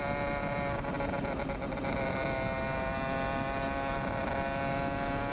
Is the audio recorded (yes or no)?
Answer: yes